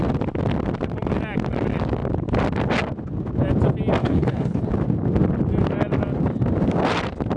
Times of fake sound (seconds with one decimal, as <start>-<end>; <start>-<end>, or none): 4.0-4.6